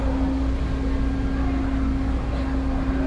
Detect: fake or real real